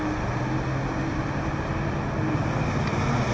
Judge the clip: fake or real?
real